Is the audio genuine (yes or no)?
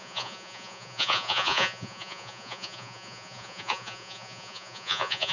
no